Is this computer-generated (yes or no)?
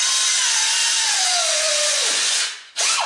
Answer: yes